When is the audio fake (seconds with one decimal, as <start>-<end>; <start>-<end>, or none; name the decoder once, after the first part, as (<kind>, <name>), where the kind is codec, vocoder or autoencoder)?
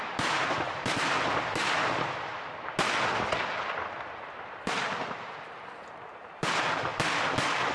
0.0-1.6 (vocoder, BigVGAN v2); 4.3-6.9